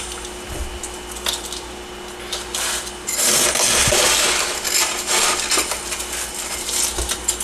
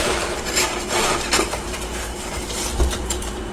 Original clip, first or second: first